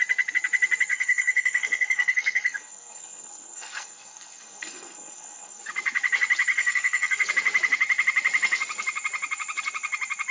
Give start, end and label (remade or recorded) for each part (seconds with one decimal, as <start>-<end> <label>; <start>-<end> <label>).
0.0-0.9 recorded; 0.9-5.6 remade; 5.6-6.5 recorded; 6.5-7.3 remade; 7.3-10.3 recorded